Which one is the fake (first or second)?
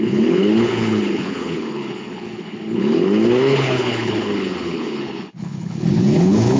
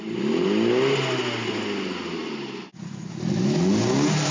first